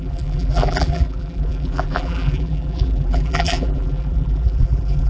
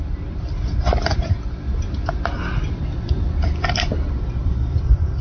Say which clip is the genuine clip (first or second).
second